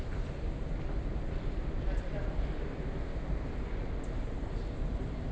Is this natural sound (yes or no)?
yes